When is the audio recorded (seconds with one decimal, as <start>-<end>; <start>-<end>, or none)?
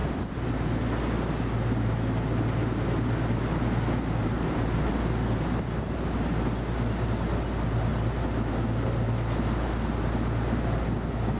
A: 0.5-4.2; 4.9-11.4